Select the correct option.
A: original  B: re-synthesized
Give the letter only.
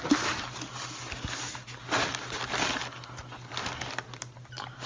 A